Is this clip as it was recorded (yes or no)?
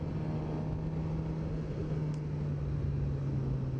yes